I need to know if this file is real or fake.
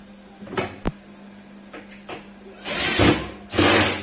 real